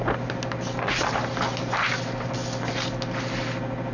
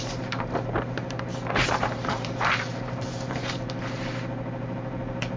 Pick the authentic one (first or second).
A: first